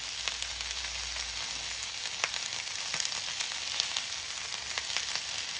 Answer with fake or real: real